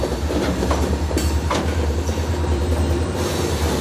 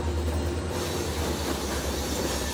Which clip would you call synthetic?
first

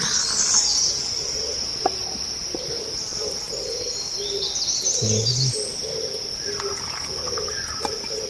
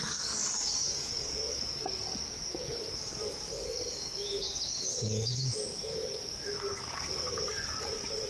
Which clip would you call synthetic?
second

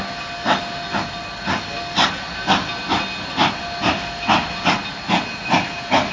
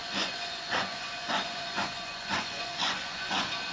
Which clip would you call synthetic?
second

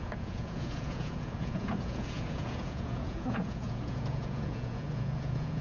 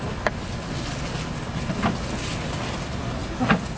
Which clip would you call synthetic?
first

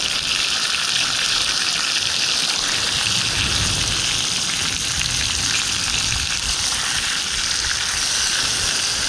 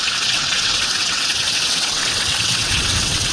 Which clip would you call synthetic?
second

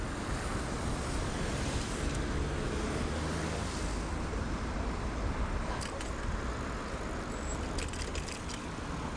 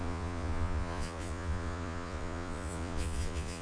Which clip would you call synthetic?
second